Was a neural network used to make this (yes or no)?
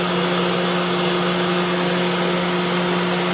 no